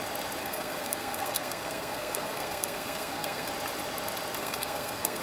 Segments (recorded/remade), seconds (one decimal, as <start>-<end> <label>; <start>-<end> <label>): 0.0-0.4 recorded; 0.4-3.5 remade; 3.5-4.4 recorded; 4.4-5.2 remade